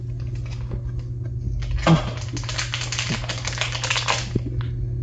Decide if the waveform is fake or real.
real